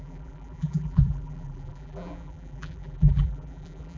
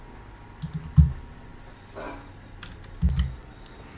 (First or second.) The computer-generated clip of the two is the first